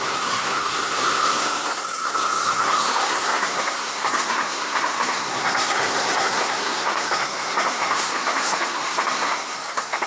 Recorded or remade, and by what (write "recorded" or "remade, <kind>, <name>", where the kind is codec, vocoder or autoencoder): remade, codec, SNAC